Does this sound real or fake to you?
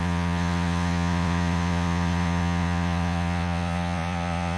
fake